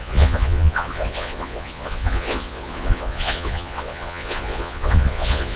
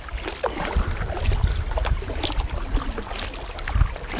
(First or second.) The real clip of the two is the second